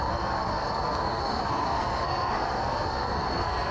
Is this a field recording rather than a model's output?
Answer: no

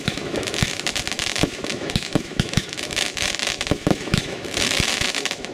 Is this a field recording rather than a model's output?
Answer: no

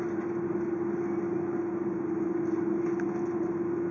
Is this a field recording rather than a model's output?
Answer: yes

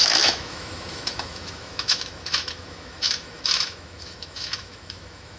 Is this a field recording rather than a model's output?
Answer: no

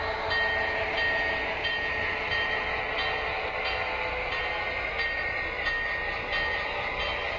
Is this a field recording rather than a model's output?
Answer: yes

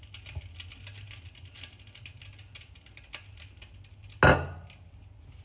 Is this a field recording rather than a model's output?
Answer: yes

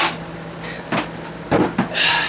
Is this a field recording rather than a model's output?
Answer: yes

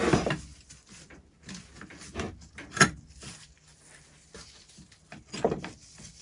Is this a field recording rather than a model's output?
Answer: yes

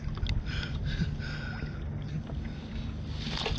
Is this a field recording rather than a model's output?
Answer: yes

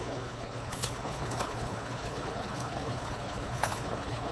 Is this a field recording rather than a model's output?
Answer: no